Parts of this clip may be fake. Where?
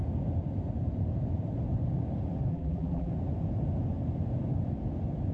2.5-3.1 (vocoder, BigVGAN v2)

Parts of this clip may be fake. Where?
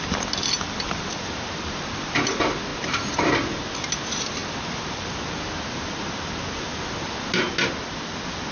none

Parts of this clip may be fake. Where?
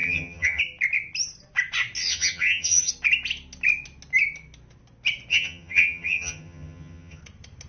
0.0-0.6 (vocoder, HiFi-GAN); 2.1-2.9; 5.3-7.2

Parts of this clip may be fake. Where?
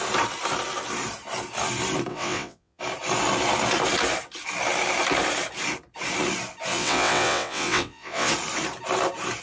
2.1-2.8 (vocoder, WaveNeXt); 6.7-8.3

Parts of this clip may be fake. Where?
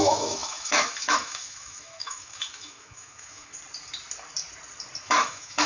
0.0-3.5 (autoencoder, DAC-VAE); 5.0-5.7